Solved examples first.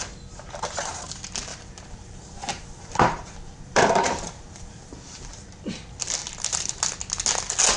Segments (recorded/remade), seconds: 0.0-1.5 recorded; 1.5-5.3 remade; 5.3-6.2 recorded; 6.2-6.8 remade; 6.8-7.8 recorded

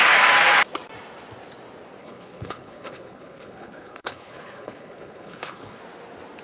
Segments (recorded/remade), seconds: 0.0-2.0 recorded; 2.0-5.8 remade; 5.8-6.4 recorded

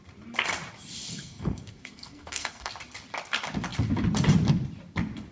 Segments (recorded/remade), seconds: 0.0-1.1 recorded; 1.1-2.7 remade; 2.7-5.3 recorded

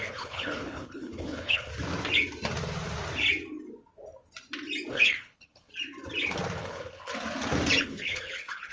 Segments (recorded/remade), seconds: 0.0-1.7 remade; 1.7-4.9 recorded; 4.9-5.7 remade; 5.7-6.6 recorded; 6.6-7.1 remade; 7.1-7.8 recorded; 7.8-8.7 remade